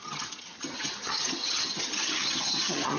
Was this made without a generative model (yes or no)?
no